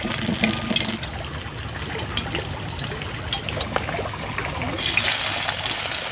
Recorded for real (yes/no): yes